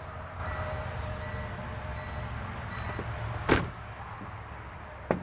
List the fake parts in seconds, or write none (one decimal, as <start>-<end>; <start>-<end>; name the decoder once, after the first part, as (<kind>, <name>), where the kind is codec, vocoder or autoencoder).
none